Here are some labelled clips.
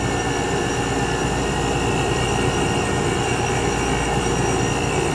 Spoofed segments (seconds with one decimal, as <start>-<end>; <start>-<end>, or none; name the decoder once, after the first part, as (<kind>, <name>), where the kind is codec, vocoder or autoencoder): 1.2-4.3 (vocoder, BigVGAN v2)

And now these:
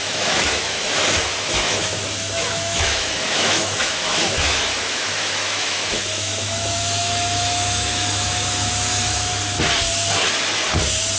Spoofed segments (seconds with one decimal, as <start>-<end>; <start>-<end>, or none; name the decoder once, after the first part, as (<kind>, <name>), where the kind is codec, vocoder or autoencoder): 0.0-9.3 (autoencoder, DAC-VAE)

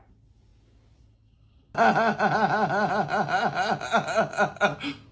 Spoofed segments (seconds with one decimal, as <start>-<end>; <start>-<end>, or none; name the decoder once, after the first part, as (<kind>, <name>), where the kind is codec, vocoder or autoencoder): none

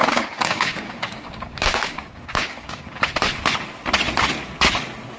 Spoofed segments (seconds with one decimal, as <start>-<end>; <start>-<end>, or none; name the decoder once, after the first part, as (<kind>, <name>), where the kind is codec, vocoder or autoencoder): 0.0-3.1 (codec, DAC)